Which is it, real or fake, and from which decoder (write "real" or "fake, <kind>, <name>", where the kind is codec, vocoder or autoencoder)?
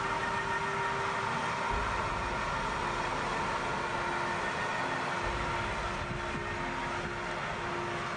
real